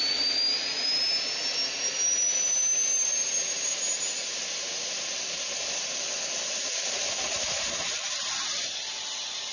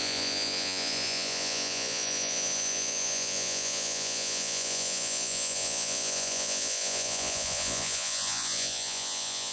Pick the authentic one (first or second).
first